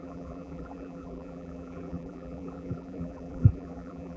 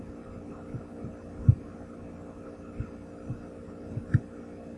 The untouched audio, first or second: second